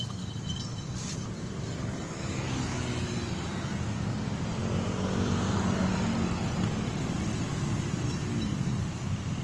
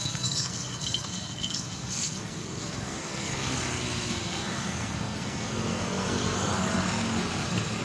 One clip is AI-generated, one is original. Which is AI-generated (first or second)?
second